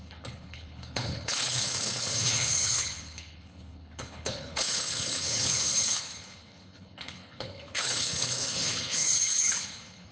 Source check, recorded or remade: remade